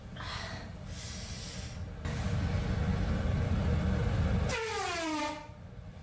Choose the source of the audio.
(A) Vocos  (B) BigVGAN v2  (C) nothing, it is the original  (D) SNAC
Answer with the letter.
C